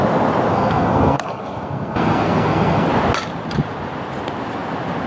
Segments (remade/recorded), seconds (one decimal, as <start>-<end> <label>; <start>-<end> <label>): 0.0-0.5 recorded; 0.5-2.9 remade; 2.9-5.1 recorded